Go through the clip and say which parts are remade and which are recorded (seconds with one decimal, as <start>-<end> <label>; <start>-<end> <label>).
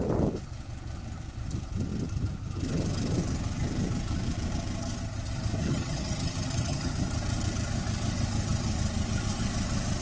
0.0-5.6 recorded; 5.6-6.9 remade; 6.9-10.0 recorded